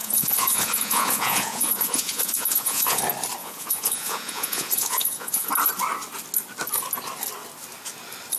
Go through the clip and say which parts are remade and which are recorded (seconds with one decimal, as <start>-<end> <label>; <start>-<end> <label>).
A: 0.0-3.0 remade; 3.0-3.4 recorded; 3.4-5.5 remade; 5.5-8.4 recorded